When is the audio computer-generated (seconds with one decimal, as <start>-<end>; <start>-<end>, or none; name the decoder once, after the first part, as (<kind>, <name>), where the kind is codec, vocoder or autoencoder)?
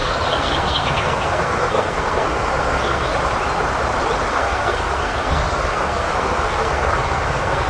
0.0-3.1 (codec, SNAC); 4.3-7.7